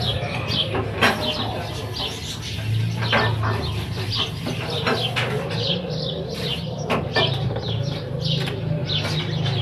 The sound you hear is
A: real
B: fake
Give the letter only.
A